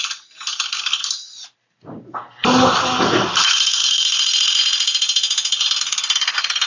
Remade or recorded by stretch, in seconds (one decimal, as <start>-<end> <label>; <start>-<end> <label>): 0.0-6.7 recorded